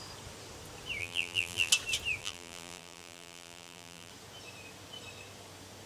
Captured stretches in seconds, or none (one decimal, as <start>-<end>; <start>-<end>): 0.0-1.0; 1.7-2.2; 4.1-5.9